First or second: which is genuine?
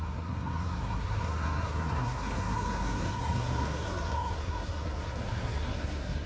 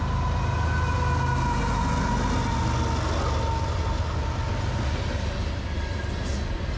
second